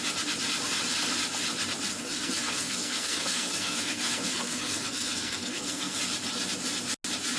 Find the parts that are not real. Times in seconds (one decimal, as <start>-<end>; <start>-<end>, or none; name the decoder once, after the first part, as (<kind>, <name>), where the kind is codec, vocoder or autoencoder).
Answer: 1.9-6.0 (codec, SNAC)